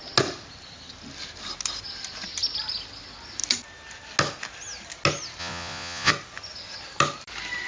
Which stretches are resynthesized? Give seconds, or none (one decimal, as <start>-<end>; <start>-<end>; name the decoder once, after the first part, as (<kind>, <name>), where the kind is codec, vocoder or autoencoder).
5.4-6.1 (vocoder, Vocos)